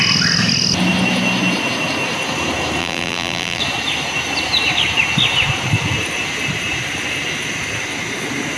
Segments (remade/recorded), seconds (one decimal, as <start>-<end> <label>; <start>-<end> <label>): 0.0-2.8 recorded; 2.8-3.6 remade; 3.6-8.6 recorded

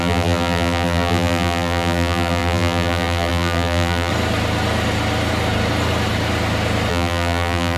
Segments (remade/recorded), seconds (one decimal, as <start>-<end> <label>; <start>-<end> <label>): 0.0-4.1 remade; 4.1-6.9 recorded; 6.9-7.8 remade

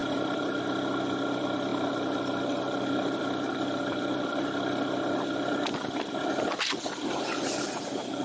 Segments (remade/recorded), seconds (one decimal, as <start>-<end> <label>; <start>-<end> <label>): 0.0-0.6 remade; 0.6-8.2 recorded

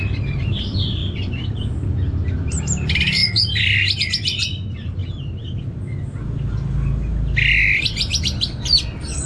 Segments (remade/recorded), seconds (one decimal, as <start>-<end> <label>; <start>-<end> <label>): 0.0-5.0 remade; 5.0-9.3 recorded

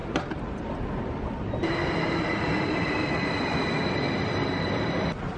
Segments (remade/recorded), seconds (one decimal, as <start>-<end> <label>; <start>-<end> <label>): 0.0-3.2 remade; 3.2-5.4 recorded

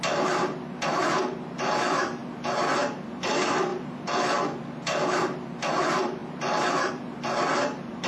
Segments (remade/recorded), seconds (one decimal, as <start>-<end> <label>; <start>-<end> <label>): 0.0-2.2 remade; 2.2-2.8 recorded; 2.8-8.1 remade

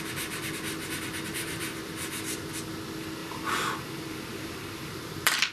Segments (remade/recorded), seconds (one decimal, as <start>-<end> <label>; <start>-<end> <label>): 0.0-1.3 recorded; 1.3-1.8 remade; 1.8-3.2 recorded; 3.2-5.5 remade